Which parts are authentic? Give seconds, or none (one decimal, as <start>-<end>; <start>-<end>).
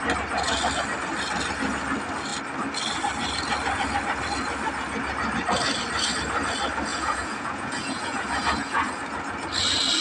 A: 0.0-6.9; 8.9-10.0